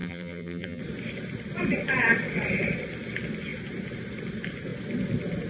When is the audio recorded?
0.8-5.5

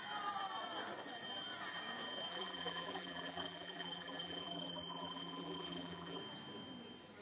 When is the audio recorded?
0.0-2.3; 6.2-7.2

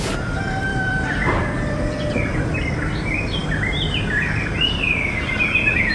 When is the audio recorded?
0.0-0.7; 2.4-5.9

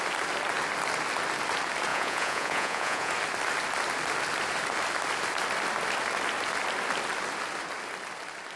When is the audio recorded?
0.0-1.9; 3.1-8.6